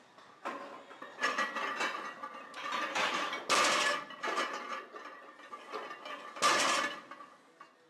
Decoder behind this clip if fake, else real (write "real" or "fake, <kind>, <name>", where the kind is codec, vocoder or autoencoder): real